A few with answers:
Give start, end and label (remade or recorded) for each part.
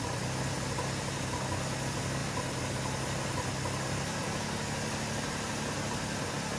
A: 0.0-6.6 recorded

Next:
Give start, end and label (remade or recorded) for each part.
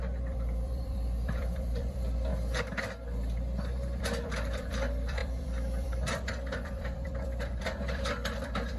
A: 0.0-2.3 remade; 2.3-4.0 recorded; 4.0-8.8 remade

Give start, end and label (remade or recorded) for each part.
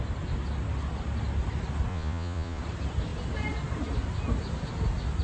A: 0.0-1.9 recorded; 1.9-2.6 remade; 2.6-5.2 recorded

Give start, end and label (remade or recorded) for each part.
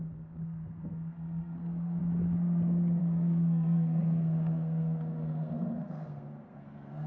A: 0.0-2.0 remade; 2.0-3.0 recorded; 3.0-7.1 remade